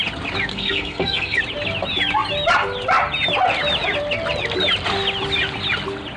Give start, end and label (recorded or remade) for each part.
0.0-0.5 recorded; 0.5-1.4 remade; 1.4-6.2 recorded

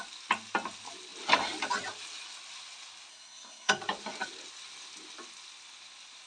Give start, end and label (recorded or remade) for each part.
0.0-3.1 recorded; 3.1-3.7 remade; 3.7-6.3 recorded

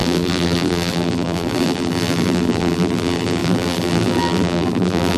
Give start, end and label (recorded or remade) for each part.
0.0-5.2 remade

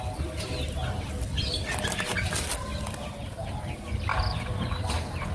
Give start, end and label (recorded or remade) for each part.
0.0-5.3 recorded

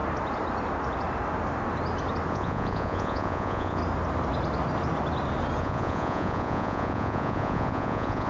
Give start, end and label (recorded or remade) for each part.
0.0-2.3 recorded; 2.3-3.8 remade; 3.8-5.6 recorded; 5.6-8.3 remade

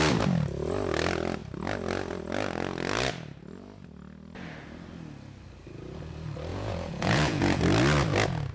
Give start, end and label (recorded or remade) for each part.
0.0-6.5 recorded; 6.5-7.6 remade; 7.6-8.5 recorded

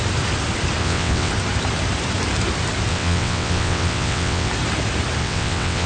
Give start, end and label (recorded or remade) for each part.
0.0-0.8 recorded; 0.8-1.3 remade; 1.3-2.9 recorded; 2.9-4.5 remade; 4.5-5.2 recorded; 5.2-5.9 remade

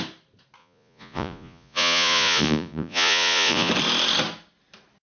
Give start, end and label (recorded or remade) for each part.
0.0-0.6 recorded; 0.6-3.7 remade; 3.7-5.2 recorded